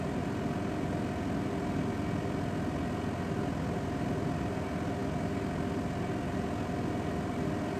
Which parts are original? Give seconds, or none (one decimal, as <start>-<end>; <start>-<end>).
0.0-7.8